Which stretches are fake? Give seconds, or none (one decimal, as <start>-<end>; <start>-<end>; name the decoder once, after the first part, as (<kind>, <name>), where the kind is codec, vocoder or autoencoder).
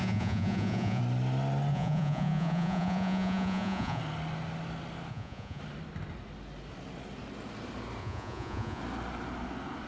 0.0-1.0 (vocoder, Vocos); 1.7-4.0; 5.1-5.6; 8.0-8.8